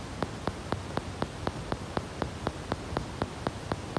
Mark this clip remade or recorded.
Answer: recorded